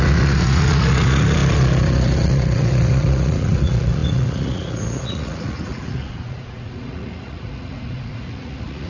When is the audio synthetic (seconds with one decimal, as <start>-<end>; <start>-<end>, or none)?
0.0-8.9